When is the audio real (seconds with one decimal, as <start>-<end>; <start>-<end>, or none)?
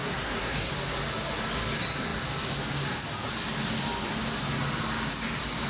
0.7-5.7